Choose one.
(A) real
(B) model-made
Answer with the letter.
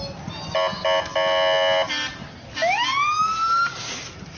A